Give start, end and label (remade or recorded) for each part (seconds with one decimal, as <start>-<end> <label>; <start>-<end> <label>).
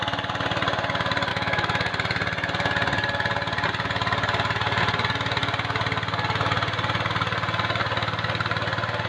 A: 0.0-1.3 recorded; 1.3-1.9 remade; 1.9-9.1 recorded